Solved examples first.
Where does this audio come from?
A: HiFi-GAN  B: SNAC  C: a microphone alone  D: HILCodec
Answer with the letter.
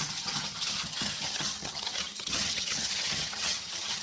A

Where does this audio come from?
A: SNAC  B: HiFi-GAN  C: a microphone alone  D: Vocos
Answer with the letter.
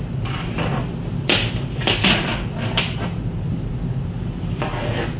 C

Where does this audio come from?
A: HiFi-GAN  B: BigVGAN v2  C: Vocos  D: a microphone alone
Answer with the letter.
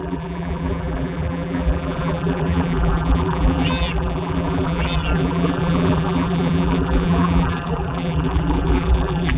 B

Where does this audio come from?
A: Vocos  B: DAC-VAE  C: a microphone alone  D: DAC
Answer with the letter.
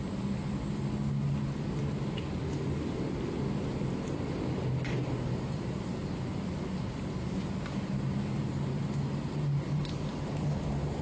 C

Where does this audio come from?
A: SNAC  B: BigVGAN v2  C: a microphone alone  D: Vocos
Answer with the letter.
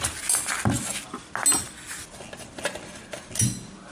C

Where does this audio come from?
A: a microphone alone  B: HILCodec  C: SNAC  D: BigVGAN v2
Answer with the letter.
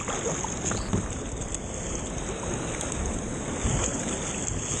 A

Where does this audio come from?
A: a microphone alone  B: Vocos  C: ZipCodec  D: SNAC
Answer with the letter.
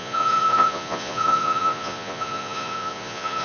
B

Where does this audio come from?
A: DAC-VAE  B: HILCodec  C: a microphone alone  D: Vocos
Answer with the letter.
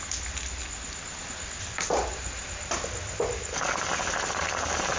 C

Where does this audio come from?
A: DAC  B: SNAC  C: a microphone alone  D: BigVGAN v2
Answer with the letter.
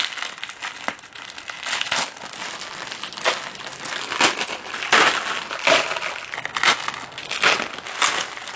C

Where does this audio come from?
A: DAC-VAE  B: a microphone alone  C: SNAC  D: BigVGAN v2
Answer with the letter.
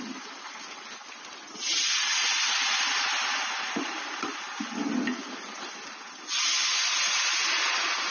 B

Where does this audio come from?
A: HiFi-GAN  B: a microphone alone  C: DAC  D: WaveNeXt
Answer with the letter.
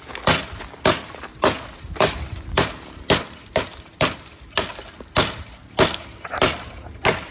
B